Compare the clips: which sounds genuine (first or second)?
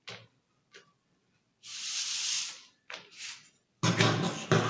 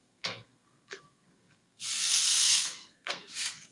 first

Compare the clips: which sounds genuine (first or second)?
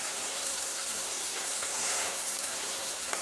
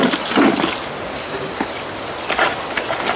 second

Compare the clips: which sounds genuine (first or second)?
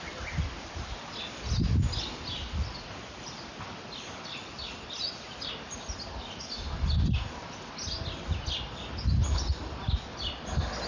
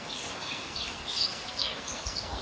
first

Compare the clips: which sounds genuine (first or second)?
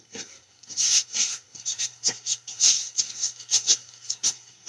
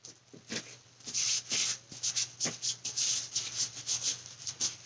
second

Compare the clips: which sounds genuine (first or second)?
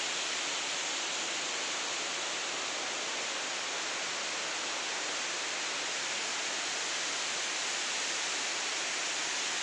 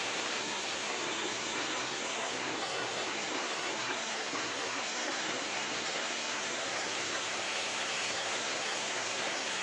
first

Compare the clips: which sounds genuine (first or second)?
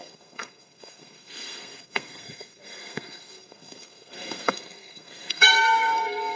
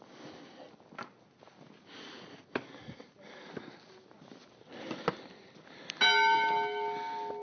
second